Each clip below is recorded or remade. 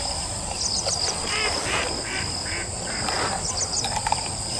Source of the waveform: recorded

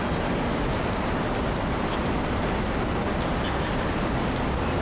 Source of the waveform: recorded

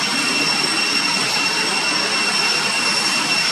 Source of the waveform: recorded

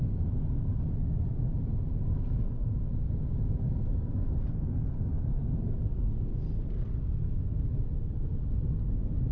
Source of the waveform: recorded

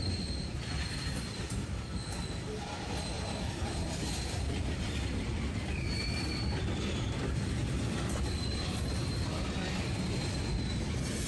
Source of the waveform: remade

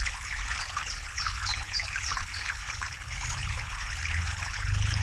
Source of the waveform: remade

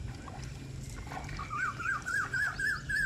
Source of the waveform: recorded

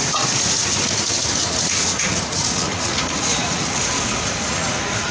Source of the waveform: remade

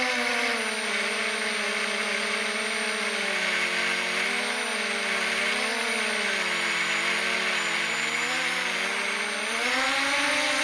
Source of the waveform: recorded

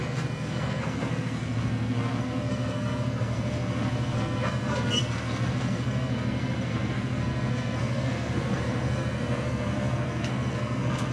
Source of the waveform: remade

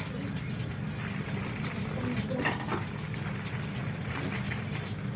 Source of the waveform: recorded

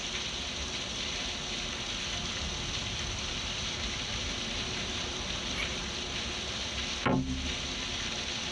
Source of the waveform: recorded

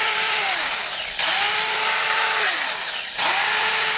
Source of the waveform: remade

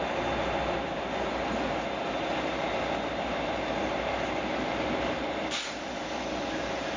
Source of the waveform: remade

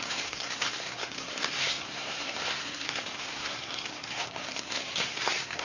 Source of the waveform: remade